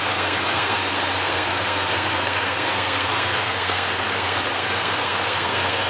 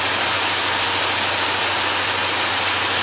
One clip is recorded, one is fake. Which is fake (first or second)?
first